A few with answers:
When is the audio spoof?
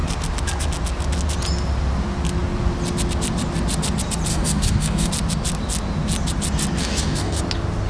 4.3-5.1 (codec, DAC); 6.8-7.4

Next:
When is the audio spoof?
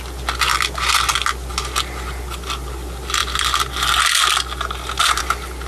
none